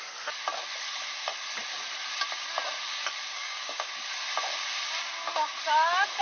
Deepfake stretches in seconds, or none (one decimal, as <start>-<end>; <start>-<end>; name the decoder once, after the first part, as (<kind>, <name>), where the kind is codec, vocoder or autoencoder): 3.3-3.9 (codec, DAC)